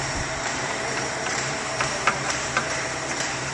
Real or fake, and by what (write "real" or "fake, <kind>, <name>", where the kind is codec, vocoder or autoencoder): fake, vocoder, BigVGAN v2